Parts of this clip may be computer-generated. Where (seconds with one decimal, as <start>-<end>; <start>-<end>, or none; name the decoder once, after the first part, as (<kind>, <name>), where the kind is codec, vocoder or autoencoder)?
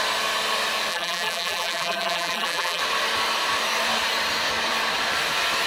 0.9-2.8 (vocoder, BigVGAN v2)